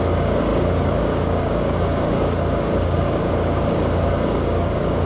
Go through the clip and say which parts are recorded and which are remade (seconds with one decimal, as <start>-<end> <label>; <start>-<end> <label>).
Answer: 0.0-5.1 remade